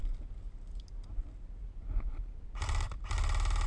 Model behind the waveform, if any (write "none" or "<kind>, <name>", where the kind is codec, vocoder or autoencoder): none